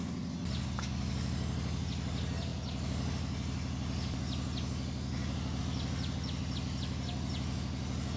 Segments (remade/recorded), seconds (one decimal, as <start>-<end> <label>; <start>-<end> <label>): 0.0-8.2 recorded